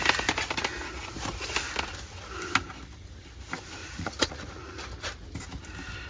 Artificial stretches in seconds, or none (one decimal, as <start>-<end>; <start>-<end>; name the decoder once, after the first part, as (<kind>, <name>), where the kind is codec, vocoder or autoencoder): 3.8-4.9 (vocoder, Vocos)